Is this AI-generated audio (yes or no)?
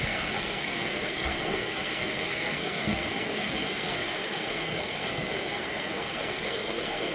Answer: yes